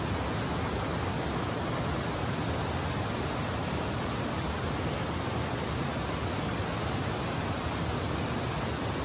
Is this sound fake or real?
real